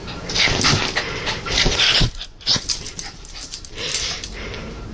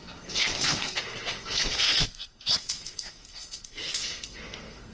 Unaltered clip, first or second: first